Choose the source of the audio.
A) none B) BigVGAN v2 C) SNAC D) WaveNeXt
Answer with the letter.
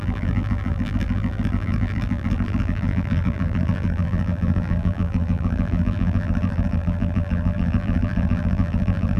B